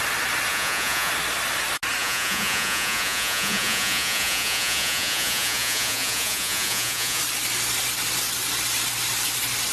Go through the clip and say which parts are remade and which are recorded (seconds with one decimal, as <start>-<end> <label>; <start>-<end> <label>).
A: 0.0-0.5 recorded; 0.5-1.1 remade; 1.1-2.0 recorded; 2.0-7.2 remade; 7.2-9.7 recorded